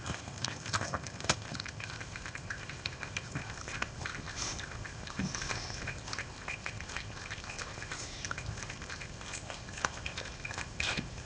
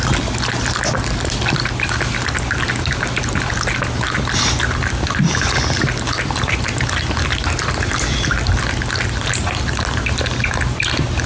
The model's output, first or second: first